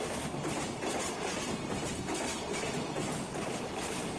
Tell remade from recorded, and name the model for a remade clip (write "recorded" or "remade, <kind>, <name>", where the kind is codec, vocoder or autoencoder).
recorded